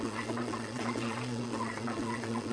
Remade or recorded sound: remade